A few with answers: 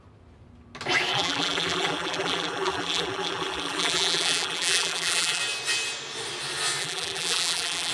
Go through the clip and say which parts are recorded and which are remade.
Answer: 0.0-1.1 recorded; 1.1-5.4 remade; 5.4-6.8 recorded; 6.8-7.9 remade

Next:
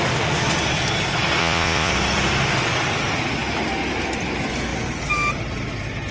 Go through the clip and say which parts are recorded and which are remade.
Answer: 0.0-1.4 recorded; 1.4-1.9 remade; 1.9-6.1 recorded

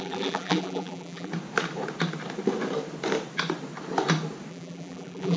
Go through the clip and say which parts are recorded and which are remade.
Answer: 0.0-1.3 remade; 1.3-4.5 recorded; 4.5-5.4 remade

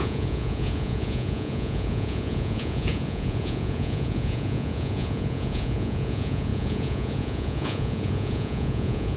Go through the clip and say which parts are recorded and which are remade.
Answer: 0.0-9.2 remade

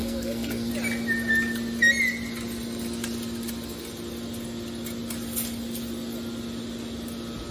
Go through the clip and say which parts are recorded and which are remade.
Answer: 0.0-0.7 remade; 0.7-7.5 recorded